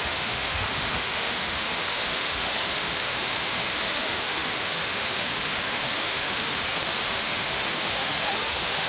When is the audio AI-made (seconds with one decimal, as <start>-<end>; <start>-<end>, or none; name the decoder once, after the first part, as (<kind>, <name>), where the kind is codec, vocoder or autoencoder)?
0.0-8.9 (autoencoder, DAC-VAE)